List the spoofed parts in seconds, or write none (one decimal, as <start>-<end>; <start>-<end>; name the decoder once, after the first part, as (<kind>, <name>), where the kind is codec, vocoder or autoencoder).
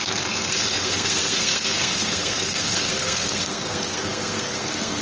0.0-5.0 (codec, SNAC)